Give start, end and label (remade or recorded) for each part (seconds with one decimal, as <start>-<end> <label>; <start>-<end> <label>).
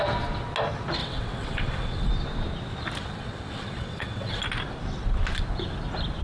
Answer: 0.0-1.0 recorded; 1.0-2.1 remade; 2.1-3.0 recorded; 3.0-4.4 remade; 4.4-6.2 recorded